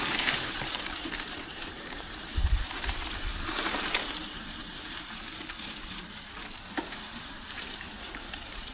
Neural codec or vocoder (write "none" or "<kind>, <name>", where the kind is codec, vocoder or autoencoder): vocoder, BigVGAN v2